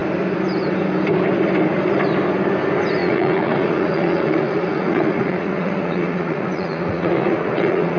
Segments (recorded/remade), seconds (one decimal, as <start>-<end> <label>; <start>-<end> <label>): 0.0-3.0 recorded; 3.0-8.0 remade